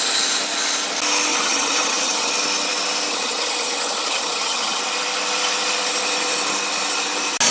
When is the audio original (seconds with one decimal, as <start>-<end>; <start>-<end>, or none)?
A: 0.0-1.3; 2.3-3.1; 4.8-7.5